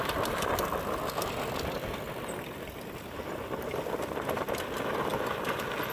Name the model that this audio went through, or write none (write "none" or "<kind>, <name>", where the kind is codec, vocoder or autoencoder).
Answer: none